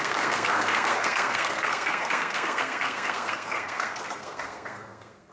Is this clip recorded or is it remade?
remade